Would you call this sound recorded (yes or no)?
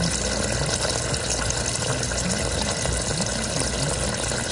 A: yes